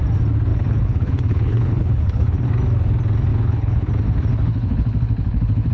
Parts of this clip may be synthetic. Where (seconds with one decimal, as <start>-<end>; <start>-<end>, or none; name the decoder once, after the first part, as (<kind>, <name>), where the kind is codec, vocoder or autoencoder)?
0.5-2.5 (codec, HILCodec); 3.3-3.9; 4.3-5.7